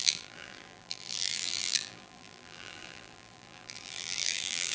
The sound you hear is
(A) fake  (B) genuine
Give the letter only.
A